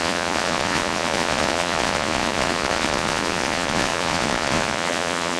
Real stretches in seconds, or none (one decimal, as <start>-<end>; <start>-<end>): none